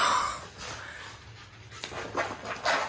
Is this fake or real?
real